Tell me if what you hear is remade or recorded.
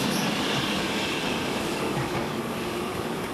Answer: remade